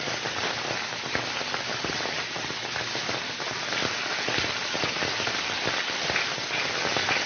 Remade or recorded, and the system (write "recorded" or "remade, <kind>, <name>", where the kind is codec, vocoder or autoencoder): recorded